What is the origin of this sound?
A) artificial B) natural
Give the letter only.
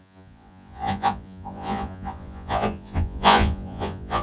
A